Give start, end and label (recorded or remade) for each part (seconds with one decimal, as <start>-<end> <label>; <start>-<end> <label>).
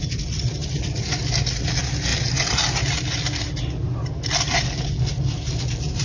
0.0-6.0 recorded